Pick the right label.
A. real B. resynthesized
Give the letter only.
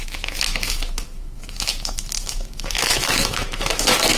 B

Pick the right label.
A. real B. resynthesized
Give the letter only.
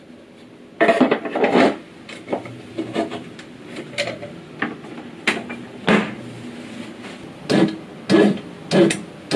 A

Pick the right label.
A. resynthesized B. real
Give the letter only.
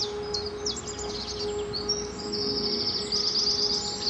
B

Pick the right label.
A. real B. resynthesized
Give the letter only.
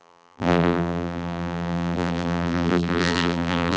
B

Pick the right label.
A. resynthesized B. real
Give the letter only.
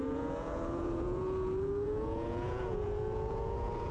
A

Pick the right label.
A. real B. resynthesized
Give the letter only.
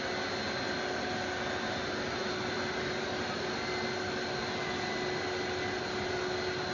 A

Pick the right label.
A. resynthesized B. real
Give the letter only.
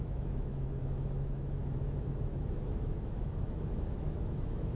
A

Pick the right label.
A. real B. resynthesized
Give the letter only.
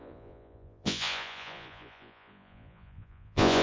B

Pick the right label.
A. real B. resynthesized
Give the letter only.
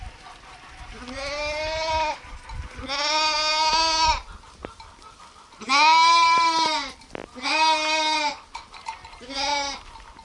A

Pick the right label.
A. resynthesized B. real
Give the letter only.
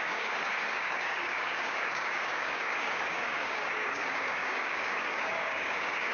A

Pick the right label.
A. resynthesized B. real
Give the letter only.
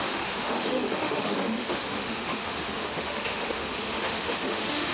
A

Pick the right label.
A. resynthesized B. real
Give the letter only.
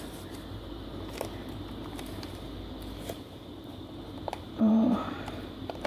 A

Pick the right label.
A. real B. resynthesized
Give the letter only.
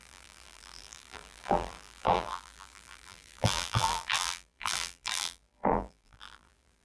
B